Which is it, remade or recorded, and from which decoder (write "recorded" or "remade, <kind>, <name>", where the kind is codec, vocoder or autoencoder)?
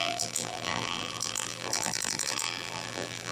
remade, vocoder, BigVGAN v2